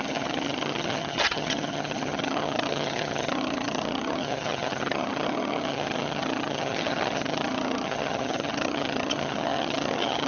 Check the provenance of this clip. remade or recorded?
remade